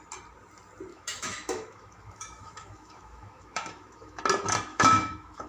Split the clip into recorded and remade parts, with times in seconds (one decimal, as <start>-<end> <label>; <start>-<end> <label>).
0.0-0.9 recorded; 0.9-4.2 remade; 4.2-4.7 recorded; 4.7-5.5 remade